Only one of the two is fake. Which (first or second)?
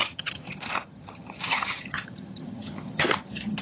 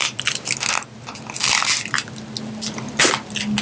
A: first